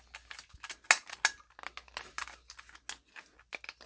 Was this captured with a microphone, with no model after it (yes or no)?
yes